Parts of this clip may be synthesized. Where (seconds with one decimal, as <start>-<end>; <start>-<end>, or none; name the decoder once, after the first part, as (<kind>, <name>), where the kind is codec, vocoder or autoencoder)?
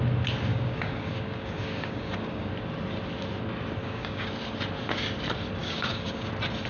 0.5-2.5 (codec, DAC); 3.8-4.3; 5.6-6.3